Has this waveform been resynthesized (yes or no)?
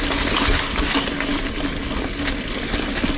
no